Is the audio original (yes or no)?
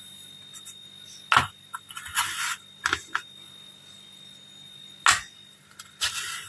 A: yes